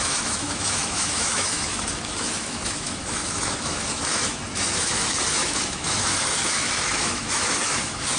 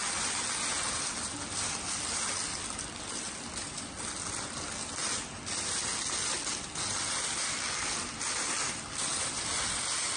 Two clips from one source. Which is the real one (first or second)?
second